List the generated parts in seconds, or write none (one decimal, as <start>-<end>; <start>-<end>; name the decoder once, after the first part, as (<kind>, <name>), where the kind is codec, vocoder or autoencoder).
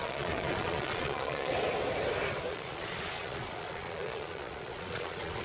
0.0-1.5 (vocoder, Vocos); 2.5-5.4